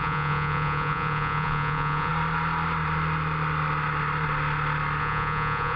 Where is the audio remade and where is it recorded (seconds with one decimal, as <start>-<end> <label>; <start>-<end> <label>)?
0.0-2.1 remade; 2.1-5.0 recorded; 5.0-5.8 remade